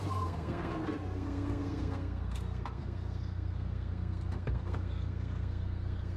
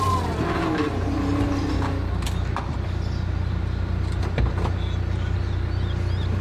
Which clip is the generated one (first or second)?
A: first